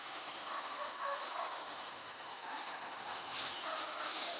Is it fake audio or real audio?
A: fake